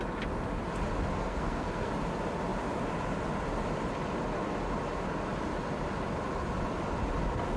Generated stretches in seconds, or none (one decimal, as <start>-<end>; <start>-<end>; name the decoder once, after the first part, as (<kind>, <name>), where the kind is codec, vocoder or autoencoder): 1.2-1.9 (codec, SNAC)